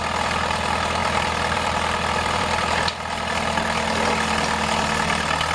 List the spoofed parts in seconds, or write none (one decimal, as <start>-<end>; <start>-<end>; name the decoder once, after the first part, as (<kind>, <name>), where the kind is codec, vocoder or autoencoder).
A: 1.0-2.4 (vocoder, BigVGAN v2)